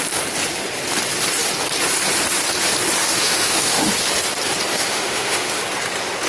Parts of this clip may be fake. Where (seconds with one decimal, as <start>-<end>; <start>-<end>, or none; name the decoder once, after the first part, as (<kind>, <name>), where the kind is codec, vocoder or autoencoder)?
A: 3.0-3.9 (autoencoder, DAC-VAE); 4.7-5.6